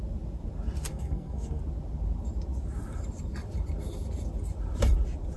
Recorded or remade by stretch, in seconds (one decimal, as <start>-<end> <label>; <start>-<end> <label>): 0.0-0.9 recorded; 0.9-1.6 remade; 1.6-5.4 recorded